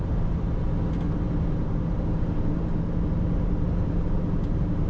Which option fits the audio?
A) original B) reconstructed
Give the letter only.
A